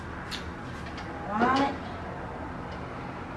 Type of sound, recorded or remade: recorded